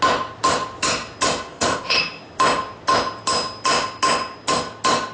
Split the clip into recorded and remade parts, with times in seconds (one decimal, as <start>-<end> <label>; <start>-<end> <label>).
0.0-1.5 recorded; 1.5-2.0 remade; 2.0-5.1 recorded